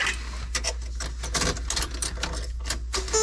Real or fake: real